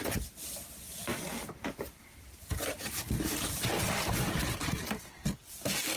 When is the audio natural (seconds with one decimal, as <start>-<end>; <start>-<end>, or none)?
0.0-6.0